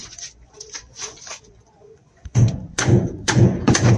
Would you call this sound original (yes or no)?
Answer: no